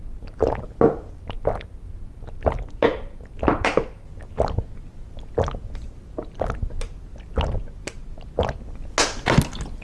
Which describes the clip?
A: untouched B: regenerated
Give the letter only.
A